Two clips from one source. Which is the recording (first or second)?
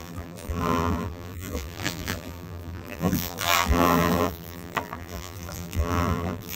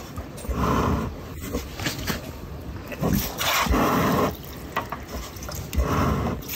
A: second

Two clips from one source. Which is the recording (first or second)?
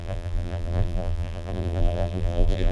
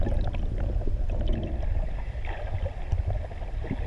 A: second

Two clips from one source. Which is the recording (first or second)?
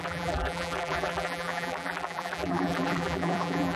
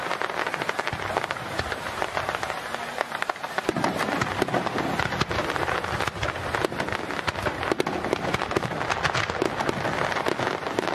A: second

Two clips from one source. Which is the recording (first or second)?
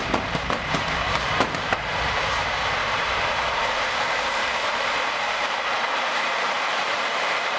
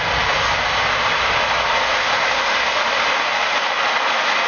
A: second